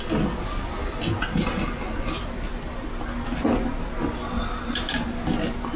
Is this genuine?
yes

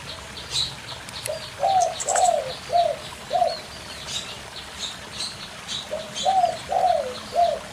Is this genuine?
yes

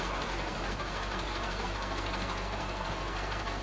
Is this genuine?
no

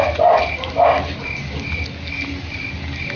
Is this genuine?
yes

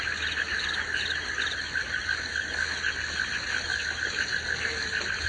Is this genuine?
yes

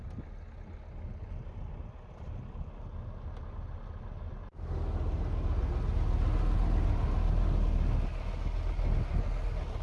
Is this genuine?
yes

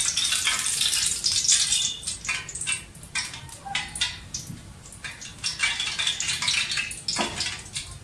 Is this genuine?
yes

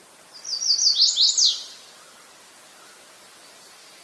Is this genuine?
yes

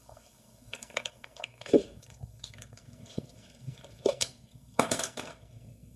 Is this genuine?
no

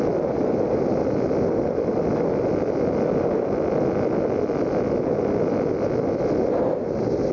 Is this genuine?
yes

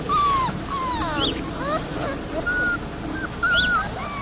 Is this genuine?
yes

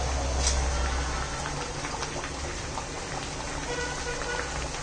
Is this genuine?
yes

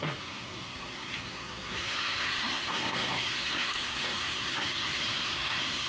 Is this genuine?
no